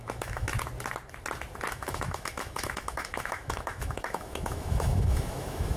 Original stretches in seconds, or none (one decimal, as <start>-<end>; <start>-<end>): 0.5-1.7